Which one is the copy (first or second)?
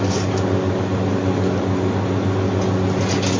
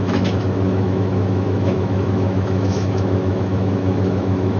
second